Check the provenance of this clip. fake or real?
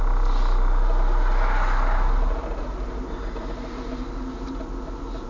real